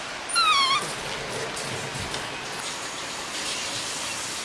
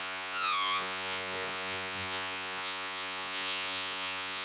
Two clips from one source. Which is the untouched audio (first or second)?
first